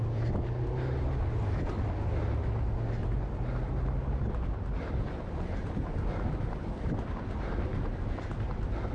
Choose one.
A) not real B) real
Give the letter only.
B